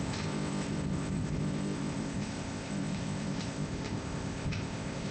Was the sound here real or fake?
fake